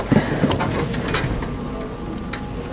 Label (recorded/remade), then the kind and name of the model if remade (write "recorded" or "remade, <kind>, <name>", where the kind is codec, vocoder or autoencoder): recorded